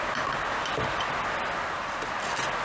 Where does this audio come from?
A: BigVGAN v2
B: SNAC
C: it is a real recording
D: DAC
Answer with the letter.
C